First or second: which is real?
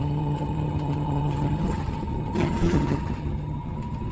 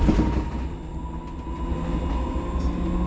second